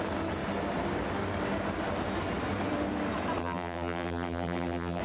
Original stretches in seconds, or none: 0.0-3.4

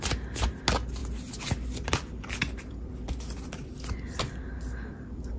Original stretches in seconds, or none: 0.0-5.4

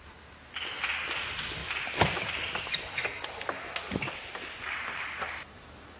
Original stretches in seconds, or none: 0.0-6.0

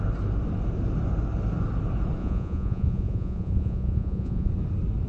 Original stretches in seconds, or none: 0.0-2.2; 4.5-5.1

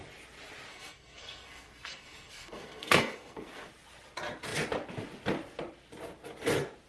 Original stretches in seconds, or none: 0.0-0.7; 3.7-6.9

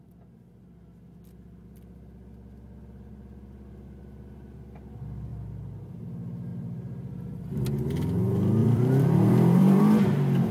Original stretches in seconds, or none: 0.0-5.3; 5.9-6.5; 7.8-8.6; 9.8-10.5

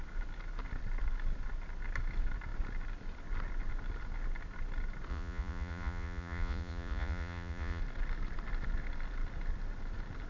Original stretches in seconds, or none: 0.0-5.1; 7.8-10.3

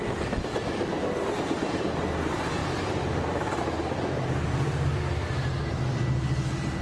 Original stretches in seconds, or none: 0.0-2.6; 3.6-6.8